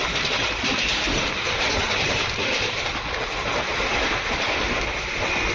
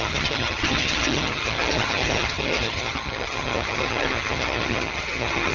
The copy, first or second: second